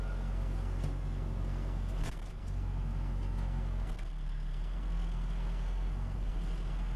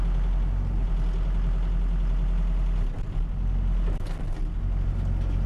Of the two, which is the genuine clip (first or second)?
second